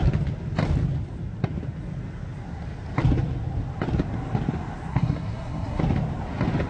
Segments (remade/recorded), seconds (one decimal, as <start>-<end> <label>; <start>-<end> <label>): 0.0-4.9 recorded; 4.9-5.8 remade; 5.8-6.7 recorded